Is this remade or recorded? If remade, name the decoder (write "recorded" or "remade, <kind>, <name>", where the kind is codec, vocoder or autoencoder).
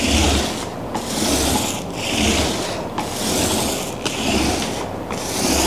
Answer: recorded